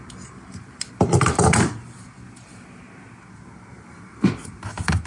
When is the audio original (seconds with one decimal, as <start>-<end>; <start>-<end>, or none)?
0.0-3.7; 4.3-5.1